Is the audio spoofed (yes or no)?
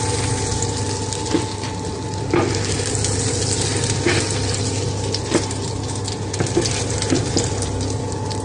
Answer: no